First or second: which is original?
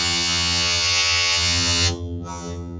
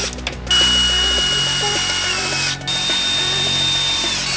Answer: second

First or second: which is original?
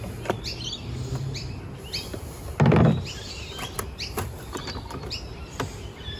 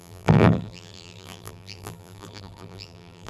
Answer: first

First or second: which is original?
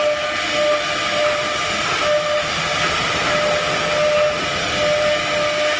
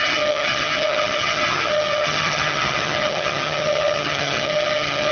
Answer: first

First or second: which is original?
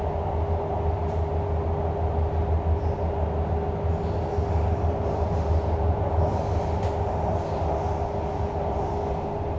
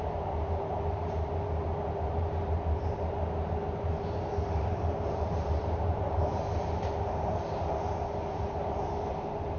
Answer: first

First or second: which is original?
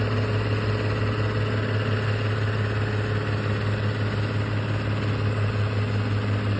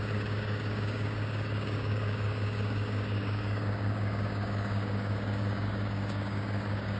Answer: first